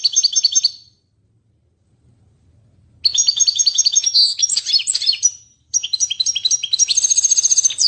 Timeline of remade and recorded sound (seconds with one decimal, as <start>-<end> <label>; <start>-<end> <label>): 0.0-2.6 remade; 2.6-3.2 recorded; 3.2-3.9 remade; 3.9-4.4 recorded; 4.4-6.2 remade; 6.2-7.9 recorded